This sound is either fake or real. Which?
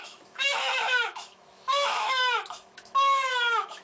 fake